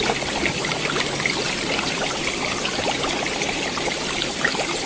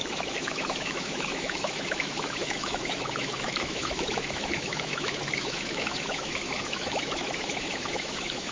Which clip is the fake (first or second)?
second